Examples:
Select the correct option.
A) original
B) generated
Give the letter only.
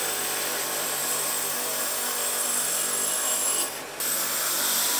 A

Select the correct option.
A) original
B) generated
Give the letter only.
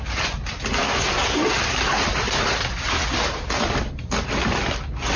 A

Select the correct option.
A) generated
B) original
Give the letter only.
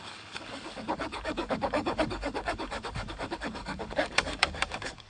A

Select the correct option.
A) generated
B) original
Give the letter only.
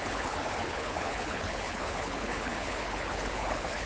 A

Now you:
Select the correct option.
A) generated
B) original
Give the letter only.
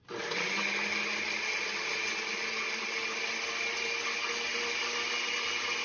B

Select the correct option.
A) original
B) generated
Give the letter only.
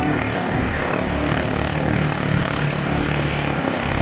B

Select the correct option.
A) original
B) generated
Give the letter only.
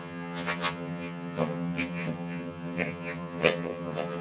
B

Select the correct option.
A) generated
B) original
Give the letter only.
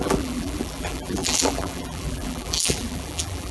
A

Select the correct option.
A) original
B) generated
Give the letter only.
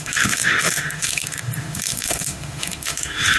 B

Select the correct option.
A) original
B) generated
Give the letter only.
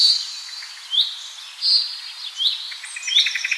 A